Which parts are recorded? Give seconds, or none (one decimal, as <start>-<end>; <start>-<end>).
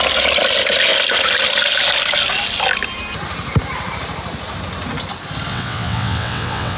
0.0-5.5